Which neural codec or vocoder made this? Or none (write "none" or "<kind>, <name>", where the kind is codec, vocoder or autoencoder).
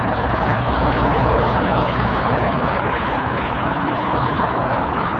codec, HILCodec